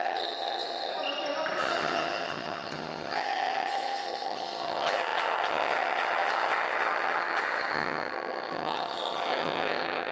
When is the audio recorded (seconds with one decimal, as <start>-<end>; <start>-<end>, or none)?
0.9-1.6